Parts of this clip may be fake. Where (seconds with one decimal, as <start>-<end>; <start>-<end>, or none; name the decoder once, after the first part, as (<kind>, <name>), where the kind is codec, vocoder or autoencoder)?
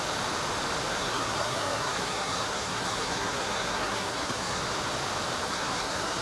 0.9-4.6 (codec, SNAC); 5.4-6.2